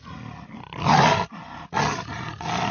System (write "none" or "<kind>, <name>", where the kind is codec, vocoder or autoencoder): none